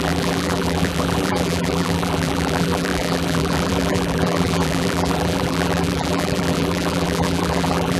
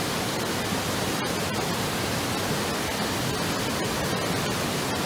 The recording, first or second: second